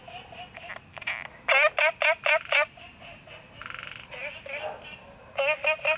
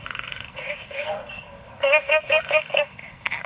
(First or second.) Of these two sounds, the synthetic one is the second